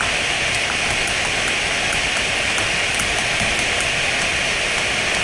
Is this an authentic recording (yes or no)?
yes